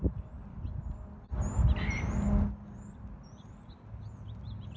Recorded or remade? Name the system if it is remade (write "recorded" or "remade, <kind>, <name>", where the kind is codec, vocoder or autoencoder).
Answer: recorded